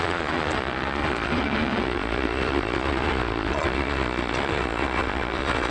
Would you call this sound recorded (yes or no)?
no